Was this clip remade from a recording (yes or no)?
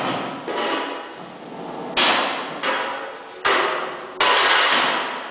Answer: no